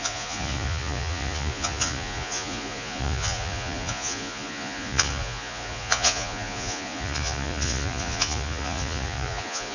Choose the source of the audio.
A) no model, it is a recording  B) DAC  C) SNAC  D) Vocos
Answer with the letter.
D